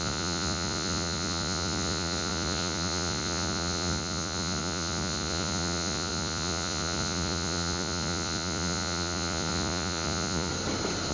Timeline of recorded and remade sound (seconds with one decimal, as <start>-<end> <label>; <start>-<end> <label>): 0.0-10.5 remade; 10.5-11.1 recorded